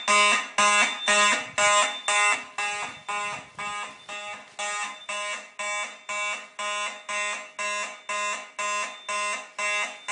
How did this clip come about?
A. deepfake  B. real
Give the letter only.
B